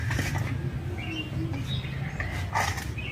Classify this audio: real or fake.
real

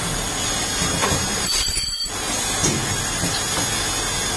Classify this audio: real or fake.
real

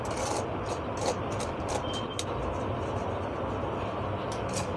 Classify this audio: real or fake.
real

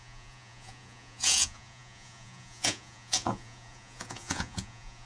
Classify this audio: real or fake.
fake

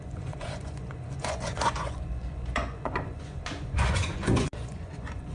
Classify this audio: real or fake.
fake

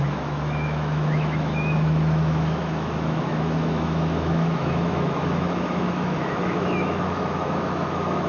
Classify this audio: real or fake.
fake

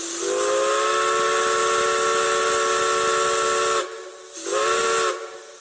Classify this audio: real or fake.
real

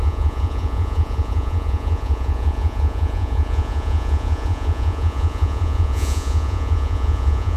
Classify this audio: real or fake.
fake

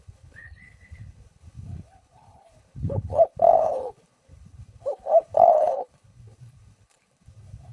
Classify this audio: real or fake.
fake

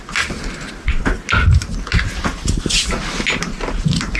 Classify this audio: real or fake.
real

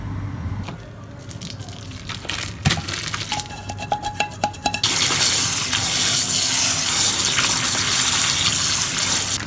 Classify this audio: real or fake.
real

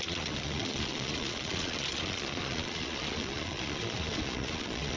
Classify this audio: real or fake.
fake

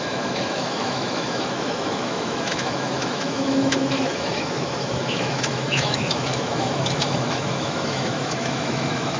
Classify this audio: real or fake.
fake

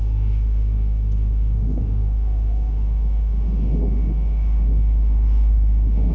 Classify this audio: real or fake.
fake